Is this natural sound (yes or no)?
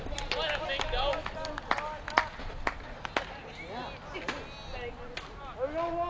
yes